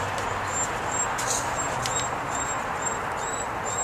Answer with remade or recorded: recorded